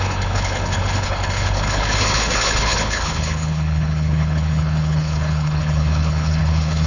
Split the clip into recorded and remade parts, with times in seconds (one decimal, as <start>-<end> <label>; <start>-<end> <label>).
0.0-6.9 remade